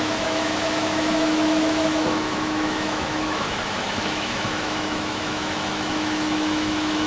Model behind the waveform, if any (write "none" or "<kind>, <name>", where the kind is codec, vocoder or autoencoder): autoencoder, DAC-VAE